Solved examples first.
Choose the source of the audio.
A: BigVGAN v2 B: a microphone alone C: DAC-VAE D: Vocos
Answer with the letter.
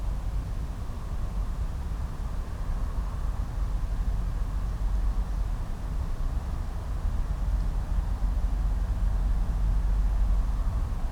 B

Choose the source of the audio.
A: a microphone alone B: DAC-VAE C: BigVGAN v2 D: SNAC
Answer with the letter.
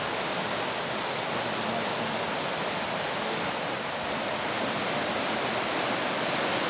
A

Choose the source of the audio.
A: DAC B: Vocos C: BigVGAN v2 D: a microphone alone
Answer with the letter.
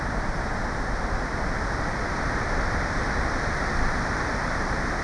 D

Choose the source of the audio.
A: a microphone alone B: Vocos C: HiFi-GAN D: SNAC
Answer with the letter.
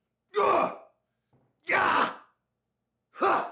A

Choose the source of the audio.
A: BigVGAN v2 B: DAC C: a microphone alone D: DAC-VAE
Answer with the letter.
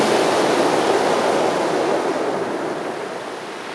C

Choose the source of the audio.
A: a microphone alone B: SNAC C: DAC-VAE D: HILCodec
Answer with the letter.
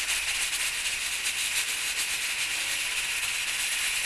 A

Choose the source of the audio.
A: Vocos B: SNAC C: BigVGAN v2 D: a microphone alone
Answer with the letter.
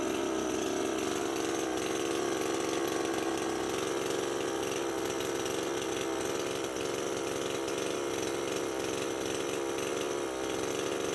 D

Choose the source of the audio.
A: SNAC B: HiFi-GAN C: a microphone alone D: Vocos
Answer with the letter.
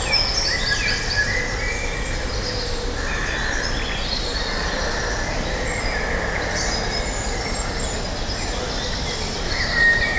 C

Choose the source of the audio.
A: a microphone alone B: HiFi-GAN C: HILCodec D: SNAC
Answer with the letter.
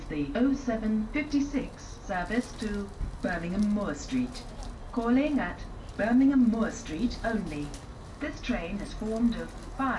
A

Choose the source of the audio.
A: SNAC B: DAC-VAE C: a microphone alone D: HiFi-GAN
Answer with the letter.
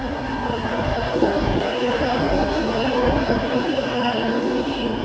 A